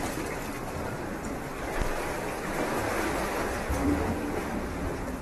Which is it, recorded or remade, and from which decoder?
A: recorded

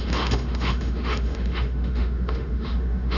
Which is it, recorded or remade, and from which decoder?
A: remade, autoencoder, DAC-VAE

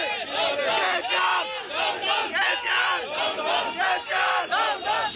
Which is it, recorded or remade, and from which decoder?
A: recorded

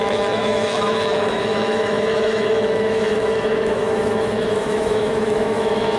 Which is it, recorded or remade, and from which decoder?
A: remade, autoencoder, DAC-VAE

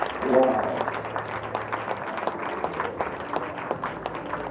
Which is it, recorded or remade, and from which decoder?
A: recorded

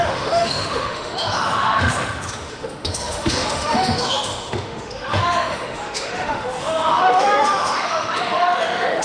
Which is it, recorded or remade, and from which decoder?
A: remade, autoencoder, DAC-VAE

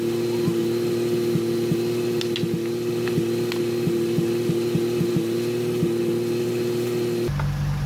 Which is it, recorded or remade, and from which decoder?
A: recorded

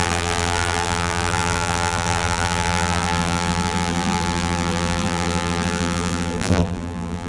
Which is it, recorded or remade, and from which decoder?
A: remade, vocoder, BigVGAN v2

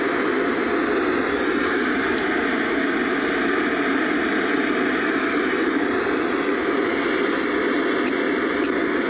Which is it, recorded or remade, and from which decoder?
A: recorded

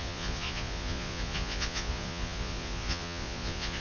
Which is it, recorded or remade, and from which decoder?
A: remade, vocoder, Vocos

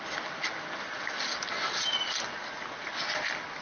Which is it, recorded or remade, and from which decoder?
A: recorded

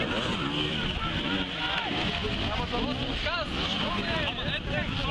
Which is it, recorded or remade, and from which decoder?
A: recorded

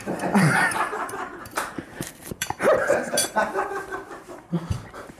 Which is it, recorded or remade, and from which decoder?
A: remade, vocoder, BigVGAN v2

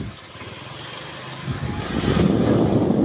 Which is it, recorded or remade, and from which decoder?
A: recorded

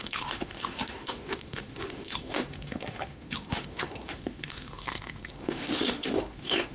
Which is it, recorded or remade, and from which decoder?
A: remade, autoencoder, DAC-VAE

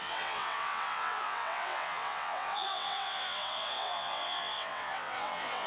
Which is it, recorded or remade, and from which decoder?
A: remade, vocoder, WaveNeXt